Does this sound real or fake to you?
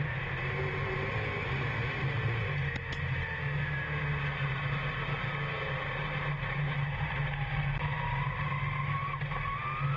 real